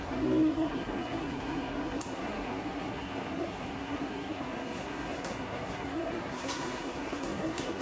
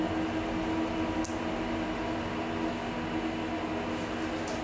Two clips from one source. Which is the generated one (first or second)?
first